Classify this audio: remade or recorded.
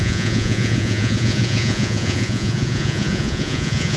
remade